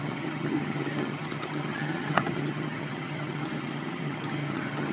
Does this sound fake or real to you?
fake